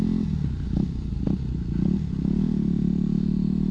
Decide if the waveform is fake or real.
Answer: real